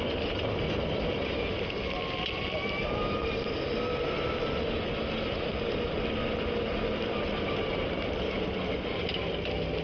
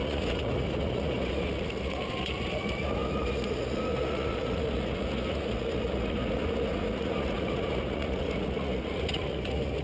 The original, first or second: first